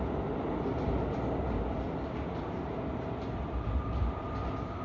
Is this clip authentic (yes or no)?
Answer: yes